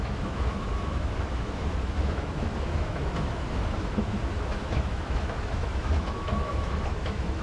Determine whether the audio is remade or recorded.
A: remade